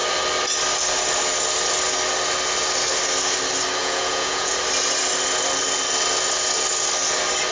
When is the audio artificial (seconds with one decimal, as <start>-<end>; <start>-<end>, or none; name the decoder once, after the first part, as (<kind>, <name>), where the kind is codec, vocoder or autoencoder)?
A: 3.8-4.5 (vocoder, Vocos)

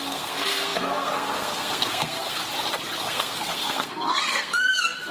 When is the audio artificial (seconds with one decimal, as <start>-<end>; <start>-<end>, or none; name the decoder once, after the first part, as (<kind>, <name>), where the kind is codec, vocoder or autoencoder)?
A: 0.0-2.4 (codec, SNAC); 3.0-5.1

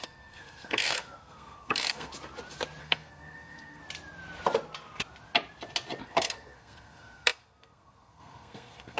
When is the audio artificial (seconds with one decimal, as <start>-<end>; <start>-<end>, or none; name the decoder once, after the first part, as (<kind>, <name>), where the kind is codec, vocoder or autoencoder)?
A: 0.0-2.1 (codec, SNAC); 2.8-3.8; 6.0-9.0

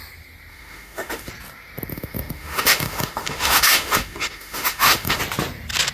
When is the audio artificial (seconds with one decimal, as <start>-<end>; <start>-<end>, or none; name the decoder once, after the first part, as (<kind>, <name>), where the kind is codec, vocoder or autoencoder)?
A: 0.5-1.3 (autoencoder, DAC-VAE); 1.9-5.2